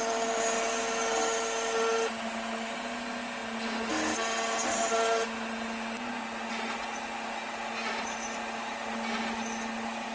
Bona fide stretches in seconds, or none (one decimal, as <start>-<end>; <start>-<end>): 0.0-10.1